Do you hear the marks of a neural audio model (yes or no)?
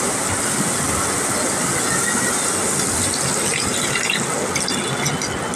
no